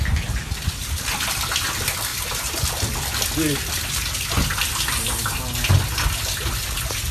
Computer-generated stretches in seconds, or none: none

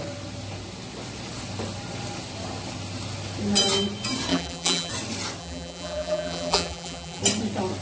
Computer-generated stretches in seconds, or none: 4.3-4.9 (vocoder, BigVGAN v2); 5.4-7.2

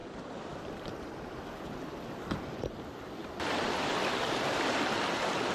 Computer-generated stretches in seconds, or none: 0.0-2.1 (vocoder, BigVGAN v2); 3.2-4.0

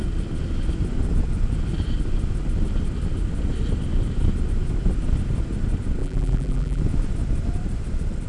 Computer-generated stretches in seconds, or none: 6.0-6.8 (vocoder, BigVGAN v2)

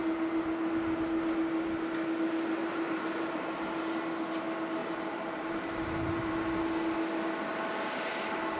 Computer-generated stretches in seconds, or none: 2.6-3.8 (vocoder, BigVGAN v2); 4.8-6.6

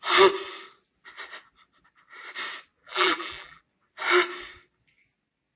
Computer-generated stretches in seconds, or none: 2.8-3.6 (vocoder, BigVGAN v2)